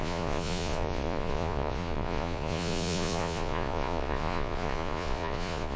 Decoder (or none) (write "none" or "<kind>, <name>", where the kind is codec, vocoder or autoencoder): vocoder, Vocos